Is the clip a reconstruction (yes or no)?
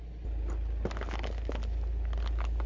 no